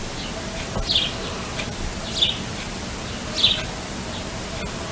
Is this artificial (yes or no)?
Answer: no